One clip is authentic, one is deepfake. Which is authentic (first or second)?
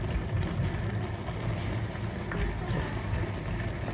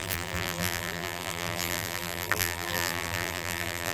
first